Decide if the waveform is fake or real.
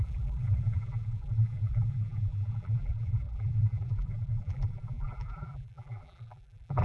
fake